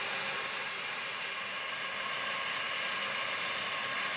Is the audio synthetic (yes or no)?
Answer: no